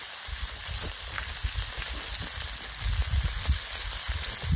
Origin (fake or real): real